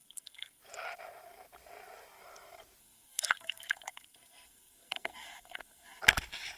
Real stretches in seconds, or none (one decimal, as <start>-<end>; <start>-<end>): 0.6-2.8; 6.0-6.6

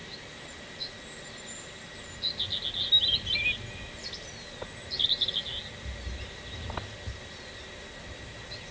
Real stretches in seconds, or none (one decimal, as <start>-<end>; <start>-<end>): 0.0-8.7

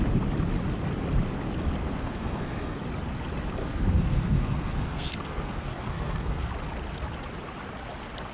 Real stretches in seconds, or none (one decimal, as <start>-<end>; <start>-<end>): 0.0-1.8; 2.8-3.6; 6.5-8.3

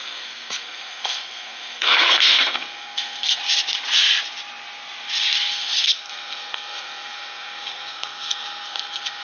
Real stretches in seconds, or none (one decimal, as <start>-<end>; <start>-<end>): 3.4-5.5